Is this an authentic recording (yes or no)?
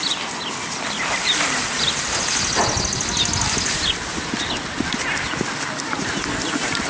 yes